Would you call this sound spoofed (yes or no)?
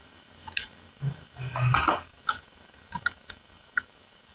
yes